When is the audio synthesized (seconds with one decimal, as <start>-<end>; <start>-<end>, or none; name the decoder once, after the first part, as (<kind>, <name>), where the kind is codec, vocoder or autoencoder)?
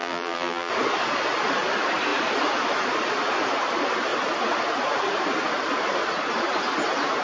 0.0-0.7 (vocoder, BigVGAN v2)